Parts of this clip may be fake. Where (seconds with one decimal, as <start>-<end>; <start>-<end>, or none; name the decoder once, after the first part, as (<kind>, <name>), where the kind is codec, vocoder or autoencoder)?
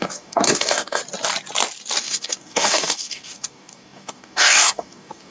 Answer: 0.0-1.0 (codec, DAC); 2.0-5.3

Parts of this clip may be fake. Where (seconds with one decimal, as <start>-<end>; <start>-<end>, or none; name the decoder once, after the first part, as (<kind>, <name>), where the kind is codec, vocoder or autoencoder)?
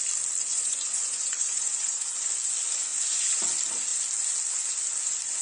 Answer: 0.5-2.3 (vocoder, Vocos); 2.9-3.4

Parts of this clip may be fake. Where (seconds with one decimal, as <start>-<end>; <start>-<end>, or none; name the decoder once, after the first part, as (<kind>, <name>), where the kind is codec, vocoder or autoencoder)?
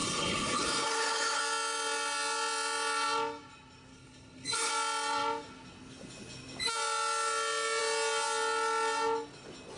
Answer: 0.0-1.4 (codec, HILCodec); 3.9-4.7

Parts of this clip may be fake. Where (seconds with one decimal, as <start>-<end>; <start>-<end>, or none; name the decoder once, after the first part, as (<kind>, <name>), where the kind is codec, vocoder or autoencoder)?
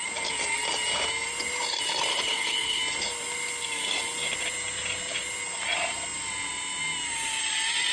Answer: 2.1-2.8 (codec, HILCodec)